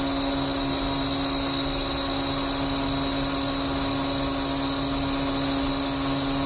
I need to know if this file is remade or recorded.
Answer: recorded